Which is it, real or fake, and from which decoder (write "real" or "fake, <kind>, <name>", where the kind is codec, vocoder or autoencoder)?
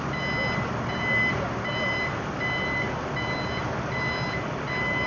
real